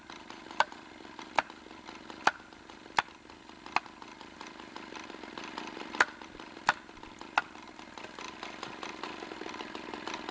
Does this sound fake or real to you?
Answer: real